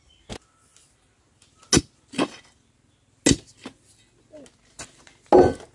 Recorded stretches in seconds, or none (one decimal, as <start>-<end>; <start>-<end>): 0.0-5.7